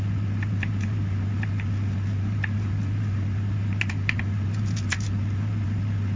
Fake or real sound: real